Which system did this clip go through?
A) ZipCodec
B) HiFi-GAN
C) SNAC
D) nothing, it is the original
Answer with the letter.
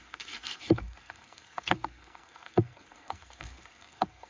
C